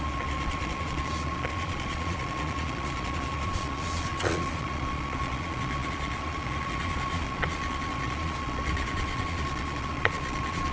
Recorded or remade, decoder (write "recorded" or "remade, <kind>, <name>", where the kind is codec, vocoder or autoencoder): remade, vocoder, Vocos